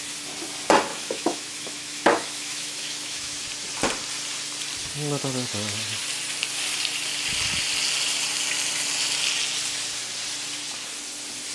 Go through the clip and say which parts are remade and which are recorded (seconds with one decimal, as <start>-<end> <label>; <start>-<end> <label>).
0.0-0.9 recorded; 0.9-3.4 remade; 3.4-11.5 recorded